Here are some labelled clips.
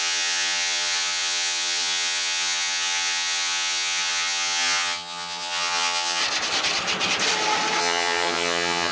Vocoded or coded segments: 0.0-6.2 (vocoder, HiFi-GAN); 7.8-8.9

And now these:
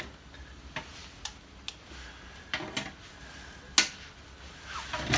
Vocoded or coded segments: none

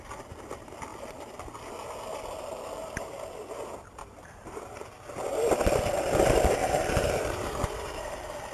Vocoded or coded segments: 4.0-4.6 (vocoder, BigVGAN v2); 6.6-7.3

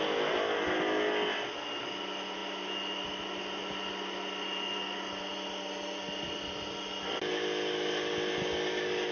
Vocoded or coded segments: none

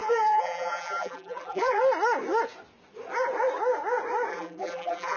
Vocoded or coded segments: 0.0-1.8 (vocoder, BigVGAN v2); 4.3-5.2

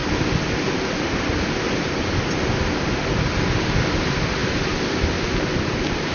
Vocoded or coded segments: none

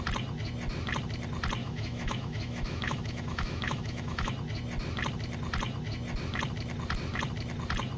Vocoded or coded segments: 1.6-4.3 (autoencoder, DAC-VAE)

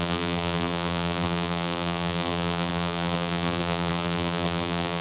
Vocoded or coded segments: 0.0-5.0 (vocoder, BigVGAN v2)